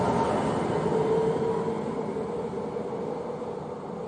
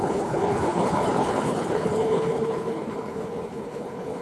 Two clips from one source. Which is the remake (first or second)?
second